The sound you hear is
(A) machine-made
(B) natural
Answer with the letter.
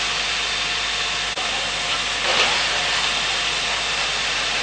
B